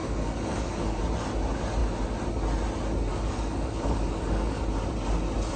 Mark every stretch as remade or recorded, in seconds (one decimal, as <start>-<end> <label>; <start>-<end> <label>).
0.0-1.0 remade; 1.0-3.1 recorded; 3.1-4.6 remade; 4.6-5.6 recorded